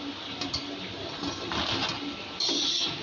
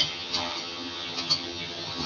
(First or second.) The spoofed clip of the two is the second